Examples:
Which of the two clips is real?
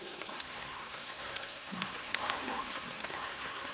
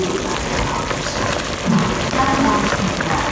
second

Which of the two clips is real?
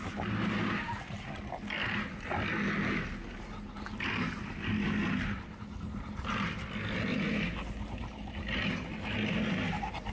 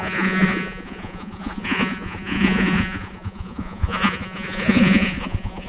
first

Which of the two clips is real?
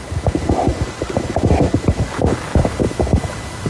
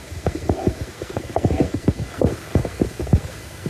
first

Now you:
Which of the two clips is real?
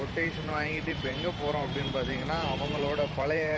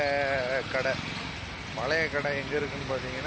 second